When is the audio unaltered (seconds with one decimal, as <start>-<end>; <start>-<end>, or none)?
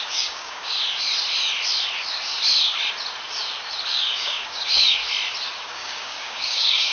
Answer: 0.7-3.9; 5.0-5.7